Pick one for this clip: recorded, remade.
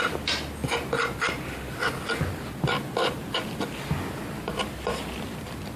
recorded